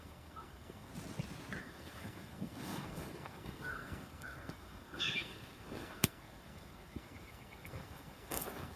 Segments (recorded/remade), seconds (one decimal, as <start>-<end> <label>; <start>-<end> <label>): 0.0-0.9 remade; 0.9-1.6 recorded; 1.6-8.8 remade